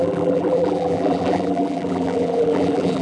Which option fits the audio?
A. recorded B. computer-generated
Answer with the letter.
B